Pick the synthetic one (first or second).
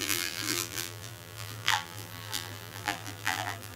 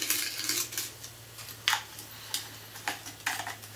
first